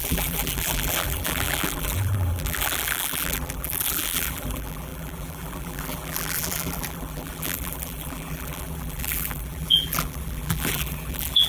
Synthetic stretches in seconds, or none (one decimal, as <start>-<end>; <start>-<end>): 0.0-11.5